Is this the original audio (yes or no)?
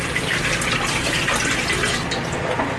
yes